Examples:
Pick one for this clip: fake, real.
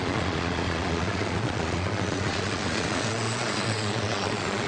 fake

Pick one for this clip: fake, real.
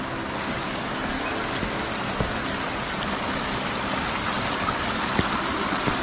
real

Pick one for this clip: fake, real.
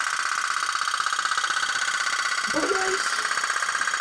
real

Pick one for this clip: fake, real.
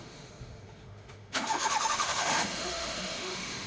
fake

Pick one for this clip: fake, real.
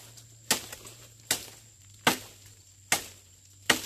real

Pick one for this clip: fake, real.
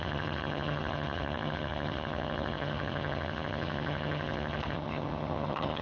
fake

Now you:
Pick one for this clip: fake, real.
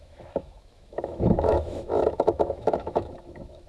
fake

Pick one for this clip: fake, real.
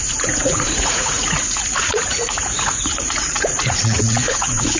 fake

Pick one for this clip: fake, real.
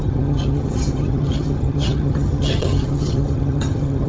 fake